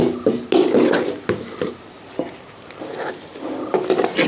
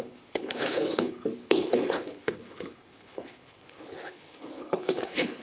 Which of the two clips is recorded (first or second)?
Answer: first